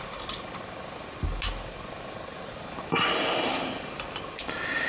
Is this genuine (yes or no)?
yes